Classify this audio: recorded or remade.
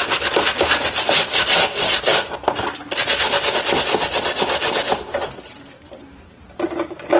recorded